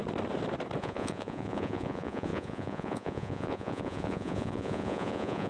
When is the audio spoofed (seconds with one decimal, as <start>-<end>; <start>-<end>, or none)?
0.8-5.5